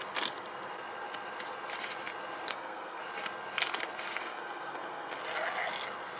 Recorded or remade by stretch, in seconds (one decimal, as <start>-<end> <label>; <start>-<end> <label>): 0.0-2.5 recorded; 2.5-3.0 remade; 3.0-4.2 recorded; 4.2-5.2 remade; 5.2-6.2 recorded